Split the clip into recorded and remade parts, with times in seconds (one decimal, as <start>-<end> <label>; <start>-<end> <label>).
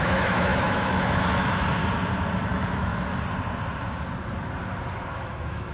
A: 0.0-1.8 remade; 1.8-2.5 recorded; 2.5-2.9 remade; 2.9-5.1 recorded; 5.1-5.7 remade